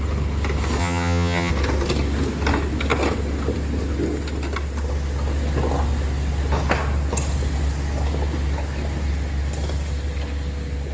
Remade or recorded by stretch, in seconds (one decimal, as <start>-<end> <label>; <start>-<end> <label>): 0.0-0.8 recorded; 0.8-1.5 remade; 1.5-10.9 recorded